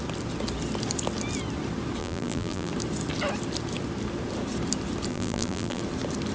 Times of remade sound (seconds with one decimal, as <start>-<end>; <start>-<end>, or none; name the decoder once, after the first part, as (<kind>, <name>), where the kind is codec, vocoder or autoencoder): 2.0-2.7 (vocoder, BigVGAN v2); 5.1-5.8